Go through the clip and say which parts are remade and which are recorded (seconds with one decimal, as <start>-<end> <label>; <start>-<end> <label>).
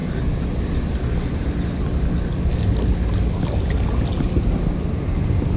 0.0-5.6 recorded